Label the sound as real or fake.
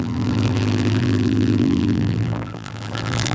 fake